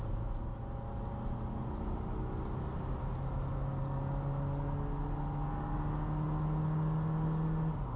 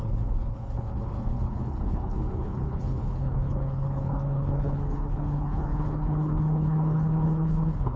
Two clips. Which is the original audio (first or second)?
first